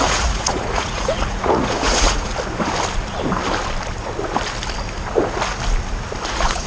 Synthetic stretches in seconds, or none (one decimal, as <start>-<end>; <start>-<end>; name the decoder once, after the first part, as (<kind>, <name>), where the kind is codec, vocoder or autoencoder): 0.0-2.3 (vocoder, Vocos); 6.3-6.7